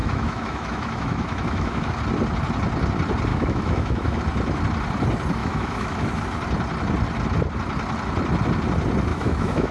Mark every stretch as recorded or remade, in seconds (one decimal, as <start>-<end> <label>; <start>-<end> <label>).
0.0-1.9 remade; 1.9-3.3 recorded; 3.3-4.2 remade; 4.2-5.4 recorded; 5.4-6.2 remade; 6.2-9.1 recorded; 9.1-9.7 remade